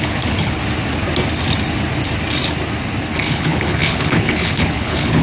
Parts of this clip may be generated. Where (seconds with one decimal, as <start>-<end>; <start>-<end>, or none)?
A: 0.0-0.6; 3.3-5.2